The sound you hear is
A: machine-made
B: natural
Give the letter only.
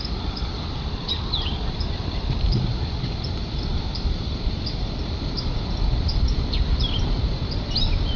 A